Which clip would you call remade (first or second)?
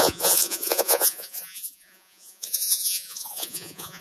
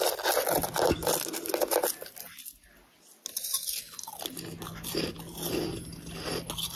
first